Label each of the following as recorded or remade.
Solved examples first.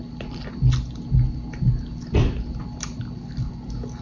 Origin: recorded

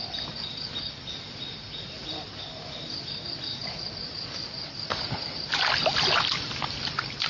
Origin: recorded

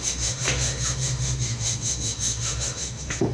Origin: remade